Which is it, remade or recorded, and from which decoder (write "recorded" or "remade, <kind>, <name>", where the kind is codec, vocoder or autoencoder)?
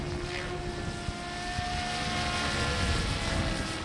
recorded